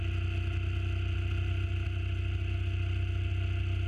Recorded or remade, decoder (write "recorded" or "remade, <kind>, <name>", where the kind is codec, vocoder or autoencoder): recorded